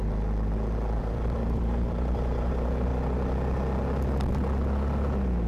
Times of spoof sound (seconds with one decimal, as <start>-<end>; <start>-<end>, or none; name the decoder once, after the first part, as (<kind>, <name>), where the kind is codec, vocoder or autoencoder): 1.0-2.9 (vocoder, BigVGAN v2)